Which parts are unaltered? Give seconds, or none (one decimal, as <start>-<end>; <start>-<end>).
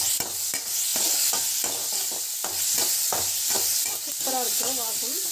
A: 0.0-5.3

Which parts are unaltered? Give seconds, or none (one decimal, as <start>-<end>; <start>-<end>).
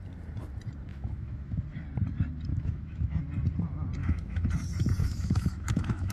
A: 0.0-0.9; 1.6-2.5; 3.2-4.0; 4.5-5.0